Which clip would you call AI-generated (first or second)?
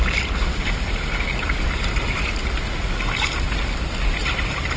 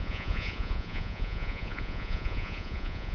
second